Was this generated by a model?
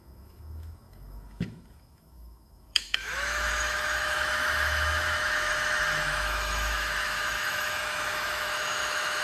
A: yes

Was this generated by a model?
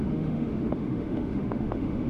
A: yes